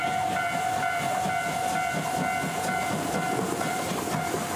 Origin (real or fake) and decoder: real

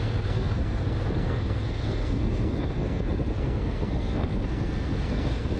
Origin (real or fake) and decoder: fake, codec, SNAC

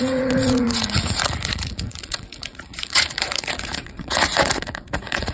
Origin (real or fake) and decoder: fake, vocoder, Vocos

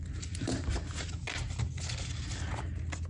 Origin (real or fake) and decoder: real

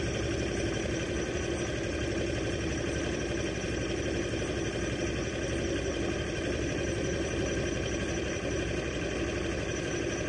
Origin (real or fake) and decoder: real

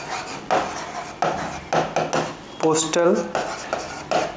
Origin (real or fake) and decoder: real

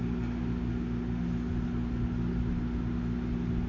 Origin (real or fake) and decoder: real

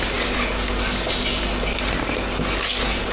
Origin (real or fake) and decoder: real